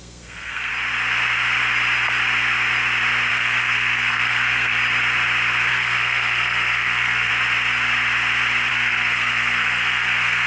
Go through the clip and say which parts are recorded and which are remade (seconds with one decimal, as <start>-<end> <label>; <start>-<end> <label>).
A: 0.0-0.7 remade; 0.7-3.3 recorded; 3.3-4.8 remade; 4.8-5.7 recorded; 5.7-7.3 remade; 7.3-8.7 recorded; 8.7-10.5 remade